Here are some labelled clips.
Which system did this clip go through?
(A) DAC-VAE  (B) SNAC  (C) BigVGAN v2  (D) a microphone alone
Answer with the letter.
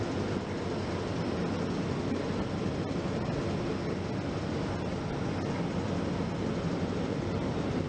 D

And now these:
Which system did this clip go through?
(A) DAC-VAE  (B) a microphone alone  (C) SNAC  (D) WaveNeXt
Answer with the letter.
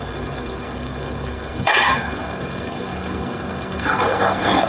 C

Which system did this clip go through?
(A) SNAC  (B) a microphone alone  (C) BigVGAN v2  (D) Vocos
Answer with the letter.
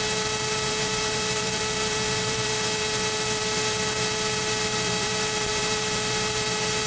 C